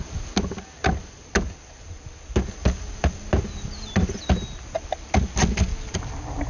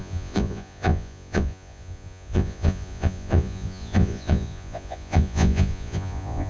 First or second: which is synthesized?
second